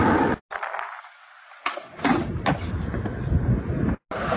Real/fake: real